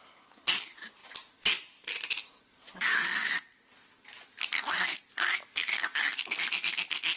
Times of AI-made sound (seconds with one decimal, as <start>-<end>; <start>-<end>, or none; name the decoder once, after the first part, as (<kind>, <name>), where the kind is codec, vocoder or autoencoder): 5.7-6.4 (codec, DAC)